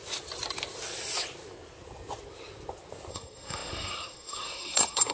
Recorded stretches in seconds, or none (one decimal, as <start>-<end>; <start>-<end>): 0.0-3.1